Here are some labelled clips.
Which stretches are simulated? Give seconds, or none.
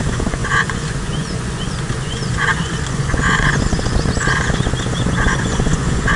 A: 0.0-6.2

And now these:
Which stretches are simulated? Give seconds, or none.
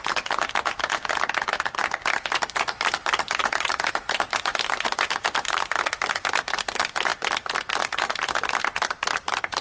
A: none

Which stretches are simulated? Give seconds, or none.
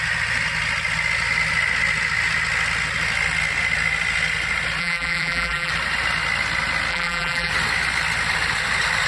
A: 4.8-5.7; 6.9-7.5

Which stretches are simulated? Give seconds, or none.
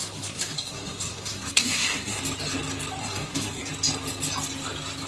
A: 0.0-2.2; 3.0-3.7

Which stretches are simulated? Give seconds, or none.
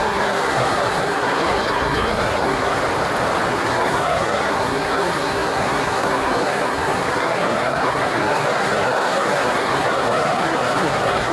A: 0.0-2.8; 3.5-11.3